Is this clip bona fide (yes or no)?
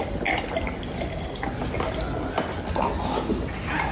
yes